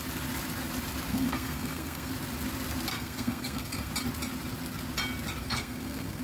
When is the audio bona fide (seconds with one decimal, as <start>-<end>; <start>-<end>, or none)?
0.0-1.1; 2.1-2.9; 3.9-5.4